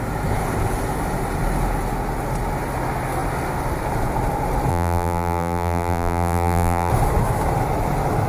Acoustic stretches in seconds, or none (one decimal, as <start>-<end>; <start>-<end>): 0.0-4.7; 6.9-8.3